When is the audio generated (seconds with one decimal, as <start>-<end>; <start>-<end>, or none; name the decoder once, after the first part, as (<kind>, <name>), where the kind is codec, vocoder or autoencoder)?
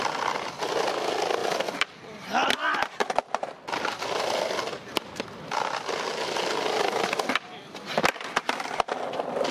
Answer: none